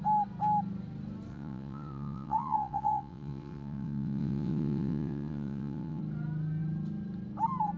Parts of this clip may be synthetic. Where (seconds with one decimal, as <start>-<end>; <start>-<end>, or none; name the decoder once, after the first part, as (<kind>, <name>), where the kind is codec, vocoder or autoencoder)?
1.3-6.0 (vocoder, WaveNeXt)